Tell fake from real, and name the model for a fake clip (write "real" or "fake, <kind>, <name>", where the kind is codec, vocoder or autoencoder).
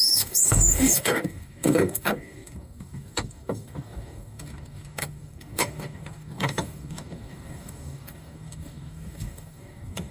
fake, codec, DAC